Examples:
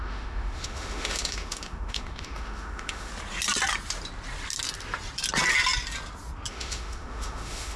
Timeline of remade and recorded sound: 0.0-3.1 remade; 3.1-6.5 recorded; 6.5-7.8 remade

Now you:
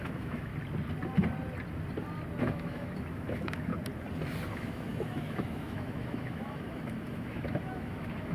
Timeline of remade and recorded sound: 0.0-0.5 remade; 0.5-2.4 recorded; 2.4-3.7 remade; 3.7-4.5 recorded; 4.5-8.3 remade